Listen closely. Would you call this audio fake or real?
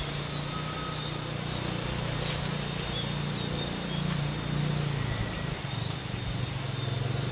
real